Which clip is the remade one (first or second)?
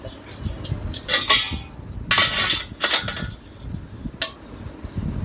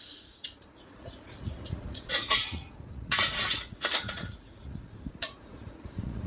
second